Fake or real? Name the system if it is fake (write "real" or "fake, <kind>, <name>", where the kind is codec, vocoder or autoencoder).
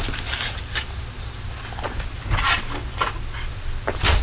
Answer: real